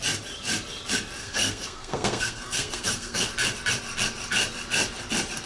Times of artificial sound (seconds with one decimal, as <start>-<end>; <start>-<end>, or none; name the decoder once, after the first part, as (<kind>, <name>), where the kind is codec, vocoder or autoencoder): 1.2-3.3 (codec, SNAC)

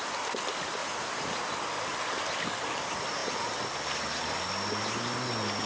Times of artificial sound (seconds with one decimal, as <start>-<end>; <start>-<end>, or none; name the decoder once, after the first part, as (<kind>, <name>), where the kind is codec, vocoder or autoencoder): none

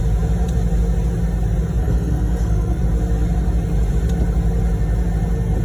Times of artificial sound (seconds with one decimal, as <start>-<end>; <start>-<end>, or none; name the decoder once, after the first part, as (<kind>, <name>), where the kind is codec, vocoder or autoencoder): 1.8-2.8 (codec, SNAC)

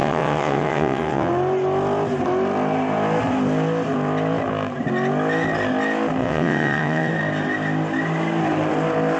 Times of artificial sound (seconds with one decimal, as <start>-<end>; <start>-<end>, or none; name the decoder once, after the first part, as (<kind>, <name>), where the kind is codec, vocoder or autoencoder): 0.0-1.3 (vocoder, WaveNeXt); 6.2-7.1

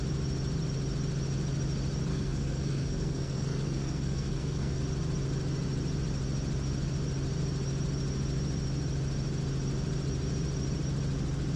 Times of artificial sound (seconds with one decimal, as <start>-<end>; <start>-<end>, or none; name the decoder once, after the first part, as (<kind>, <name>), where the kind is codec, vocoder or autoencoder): 2.1-4.8 (codec, SNAC)

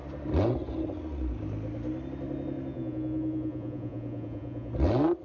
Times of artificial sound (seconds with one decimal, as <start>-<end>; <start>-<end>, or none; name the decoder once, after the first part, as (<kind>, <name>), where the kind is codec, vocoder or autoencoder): 2.7-4.7 (vocoder, Vocos)

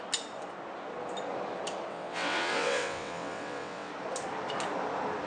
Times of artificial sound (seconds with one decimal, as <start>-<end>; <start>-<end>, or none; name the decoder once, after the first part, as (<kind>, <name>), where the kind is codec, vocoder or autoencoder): 1.9-3.9 (vocoder, WaveNeXt)